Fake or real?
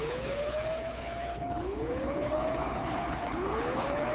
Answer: fake